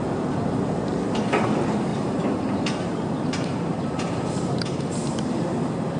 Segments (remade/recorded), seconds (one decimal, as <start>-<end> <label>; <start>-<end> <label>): 0.0-1.9 recorded; 1.9-5.5 remade; 5.5-6.0 recorded